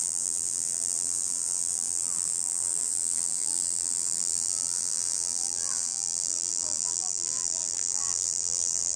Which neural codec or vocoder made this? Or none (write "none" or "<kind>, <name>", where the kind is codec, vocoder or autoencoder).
vocoder, BigVGAN v2